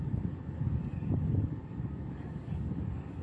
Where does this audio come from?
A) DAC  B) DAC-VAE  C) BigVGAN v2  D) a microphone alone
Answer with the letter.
A